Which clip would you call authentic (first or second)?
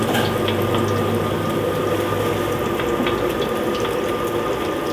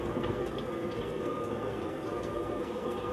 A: first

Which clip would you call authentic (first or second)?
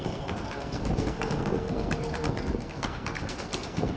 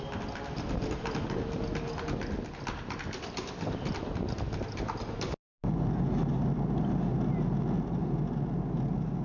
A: second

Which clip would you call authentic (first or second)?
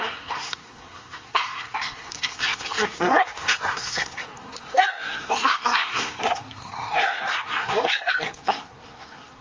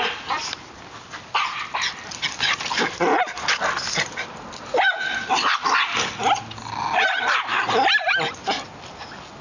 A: second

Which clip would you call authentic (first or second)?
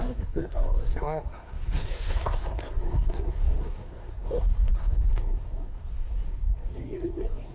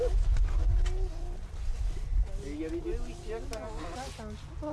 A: second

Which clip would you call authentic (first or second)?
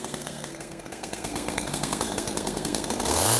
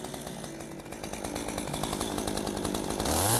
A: second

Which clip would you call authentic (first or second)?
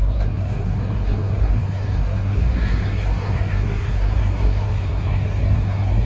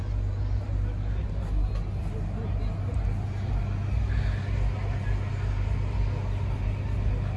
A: second